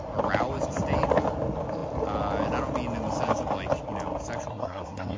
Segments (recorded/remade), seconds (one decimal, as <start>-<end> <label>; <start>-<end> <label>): 0.0-4.5 recorded; 4.5-5.2 remade